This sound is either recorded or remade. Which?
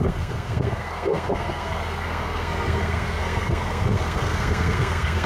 remade